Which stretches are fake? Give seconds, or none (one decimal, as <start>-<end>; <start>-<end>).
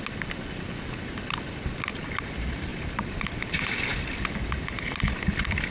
none